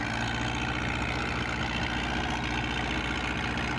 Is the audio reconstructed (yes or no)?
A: no